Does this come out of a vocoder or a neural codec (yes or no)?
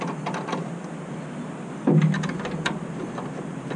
no